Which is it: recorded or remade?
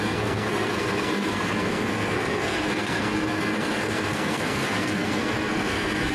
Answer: remade